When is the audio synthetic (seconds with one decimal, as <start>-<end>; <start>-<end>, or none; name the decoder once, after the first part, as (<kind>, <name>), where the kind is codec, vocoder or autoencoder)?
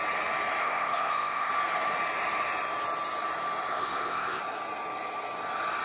0.6-1.5 (codec, ZipCodec); 3.7-4.4